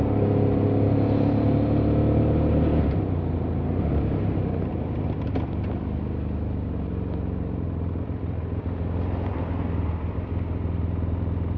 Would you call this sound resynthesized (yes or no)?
no